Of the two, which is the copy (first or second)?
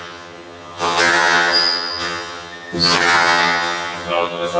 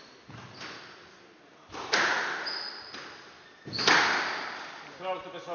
first